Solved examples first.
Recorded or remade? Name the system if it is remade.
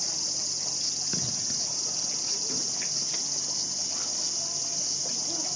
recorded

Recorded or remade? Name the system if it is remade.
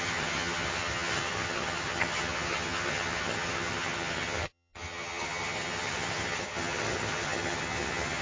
remade, vocoder, HiFi-GAN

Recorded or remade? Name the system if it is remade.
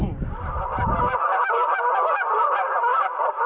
recorded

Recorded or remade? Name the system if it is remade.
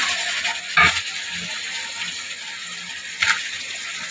recorded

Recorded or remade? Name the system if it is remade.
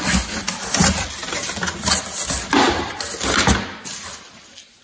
recorded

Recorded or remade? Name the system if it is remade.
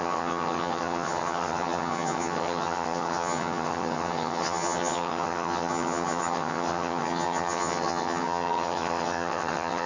remade, vocoder, HiFi-GAN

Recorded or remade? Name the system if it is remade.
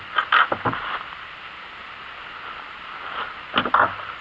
recorded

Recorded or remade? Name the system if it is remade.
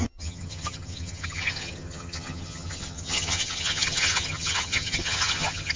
remade, vocoder, HiFi-GAN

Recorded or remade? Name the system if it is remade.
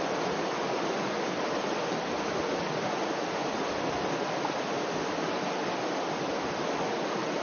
recorded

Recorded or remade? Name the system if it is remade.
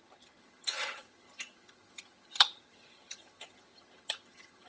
remade, vocoder, HiFi-GAN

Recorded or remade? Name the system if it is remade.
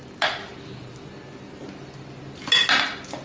recorded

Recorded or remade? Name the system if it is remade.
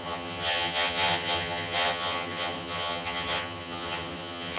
remade, vocoder, HiFi-GAN